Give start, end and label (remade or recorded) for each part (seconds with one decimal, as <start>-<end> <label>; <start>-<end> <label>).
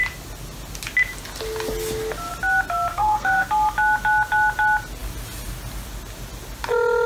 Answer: 0.0-2.9 recorded; 2.9-3.5 remade; 3.5-7.1 recorded